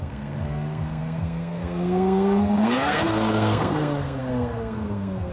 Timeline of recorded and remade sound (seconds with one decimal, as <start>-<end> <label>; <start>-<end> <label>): 0.0-5.3 remade